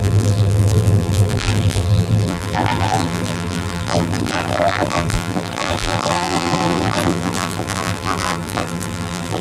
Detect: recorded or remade remade